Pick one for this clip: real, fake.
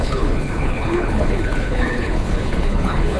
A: fake